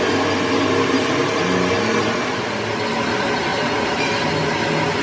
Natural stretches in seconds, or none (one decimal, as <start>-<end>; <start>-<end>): 0.0-3.5; 4.1-5.0